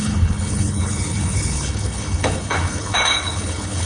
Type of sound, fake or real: fake